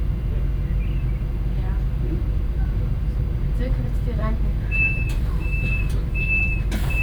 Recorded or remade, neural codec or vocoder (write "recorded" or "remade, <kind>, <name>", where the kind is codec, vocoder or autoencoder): remade, vocoder, BigVGAN v2